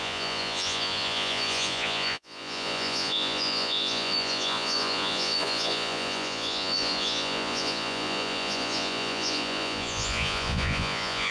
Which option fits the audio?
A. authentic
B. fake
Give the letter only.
B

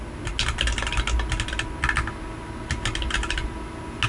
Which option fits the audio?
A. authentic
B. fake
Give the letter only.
A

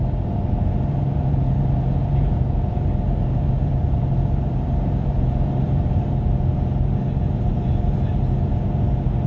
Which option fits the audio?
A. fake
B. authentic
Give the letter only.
A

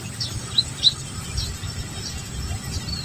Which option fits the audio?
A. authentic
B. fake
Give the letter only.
A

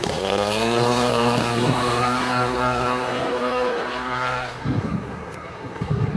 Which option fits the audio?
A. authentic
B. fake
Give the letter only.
B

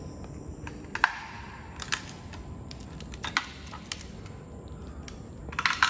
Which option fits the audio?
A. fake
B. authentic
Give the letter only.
B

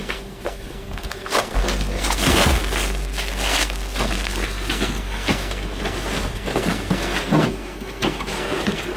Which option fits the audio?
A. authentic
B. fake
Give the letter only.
B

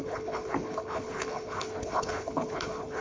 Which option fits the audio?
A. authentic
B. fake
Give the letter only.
B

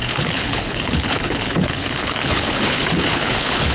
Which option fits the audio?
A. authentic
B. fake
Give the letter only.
B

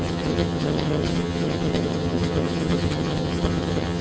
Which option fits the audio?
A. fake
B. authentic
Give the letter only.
A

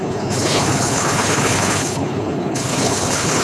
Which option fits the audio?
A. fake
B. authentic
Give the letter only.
A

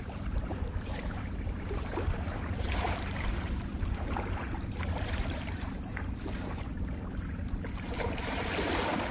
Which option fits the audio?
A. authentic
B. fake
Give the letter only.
B